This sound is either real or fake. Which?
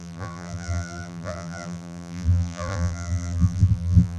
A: fake